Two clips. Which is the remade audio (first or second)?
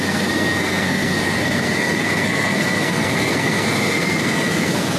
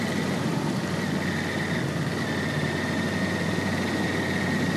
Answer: first